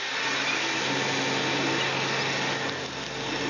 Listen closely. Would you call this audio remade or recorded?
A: recorded